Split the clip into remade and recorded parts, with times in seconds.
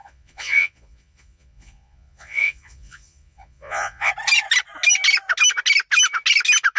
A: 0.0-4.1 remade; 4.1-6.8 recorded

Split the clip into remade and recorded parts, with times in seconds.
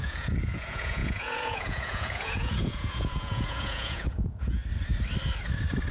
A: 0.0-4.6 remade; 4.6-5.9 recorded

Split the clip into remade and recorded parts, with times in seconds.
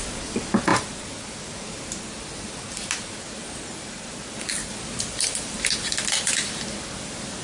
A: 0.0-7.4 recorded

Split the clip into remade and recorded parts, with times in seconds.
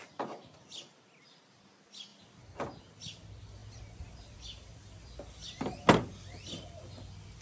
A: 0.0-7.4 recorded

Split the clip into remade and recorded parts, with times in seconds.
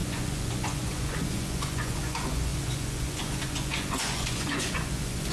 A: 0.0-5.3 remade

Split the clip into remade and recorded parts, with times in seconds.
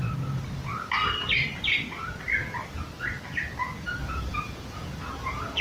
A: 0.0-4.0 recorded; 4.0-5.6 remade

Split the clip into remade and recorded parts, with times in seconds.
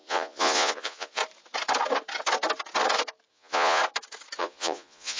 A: 0.0-1.2 remade; 1.2-3.3 recorded; 3.3-3.8 remade; 3.8-4.4 recorded; 4.4-5.2 remade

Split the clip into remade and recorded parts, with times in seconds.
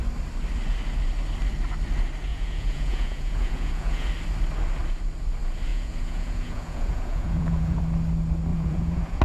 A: 0.0-2.3 recorded; 2.3-4.1 remade; 4.1-5.7 recorded; 5.7-7.8 remade; 7.8-8.5 recorded; 8.5-9.2 remade